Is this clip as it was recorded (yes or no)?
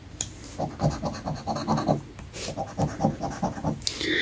yes